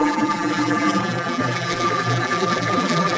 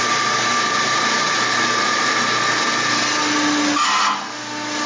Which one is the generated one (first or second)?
first